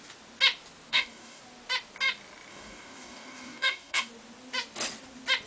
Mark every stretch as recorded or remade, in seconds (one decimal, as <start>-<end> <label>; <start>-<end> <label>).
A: 0.0-0.9 recorded; 0.9-1.4 remade; 1.4-2.5 recorded; 2.5-4.1 remade; 4.1-5.5 recorded

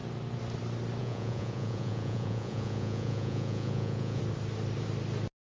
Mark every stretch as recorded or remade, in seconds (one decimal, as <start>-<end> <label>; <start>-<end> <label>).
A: 0.0-1.0 recorded; 1.0-4.2 remade; 4.2-5.4 recorded

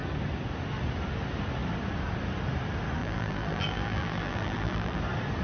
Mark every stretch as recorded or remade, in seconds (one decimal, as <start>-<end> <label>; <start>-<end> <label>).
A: 0.0-3.0 recorded; 3.0-5.0 remade; 5.0-5.4 recorded

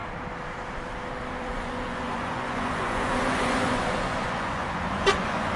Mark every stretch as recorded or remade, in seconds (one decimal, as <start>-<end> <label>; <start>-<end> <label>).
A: 0.0-1.4 recorded; 1.4-5.6 remade

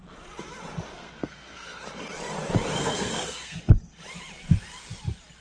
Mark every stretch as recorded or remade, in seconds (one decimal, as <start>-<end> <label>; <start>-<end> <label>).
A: 0.0-0.9 recorded; 0.9-1.8 remade; 1.8-2.7 recorded; 2.7-3.6 remade; 3.6-5.4 recorded

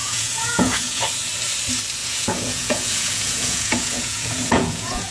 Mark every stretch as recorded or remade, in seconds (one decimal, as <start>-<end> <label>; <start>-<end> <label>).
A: 0.0-1.0 remade; 1.0-2.0 recorded; 2.0-5.1 remade

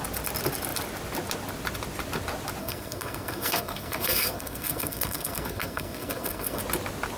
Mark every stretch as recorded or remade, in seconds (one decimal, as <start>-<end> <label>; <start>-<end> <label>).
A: 0.0-2.6 recorded; 2.6-6.6 remade; 6.6-7.2 recorded

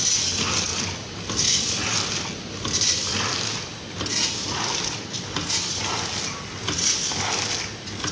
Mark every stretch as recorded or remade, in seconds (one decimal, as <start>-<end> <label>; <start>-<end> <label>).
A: 0.0-8.1 recorded